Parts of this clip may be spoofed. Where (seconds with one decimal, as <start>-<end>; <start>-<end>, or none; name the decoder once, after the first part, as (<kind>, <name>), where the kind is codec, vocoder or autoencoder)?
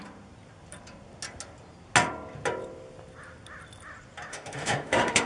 4.3-5.3 (autoencoder, DAC-VAE)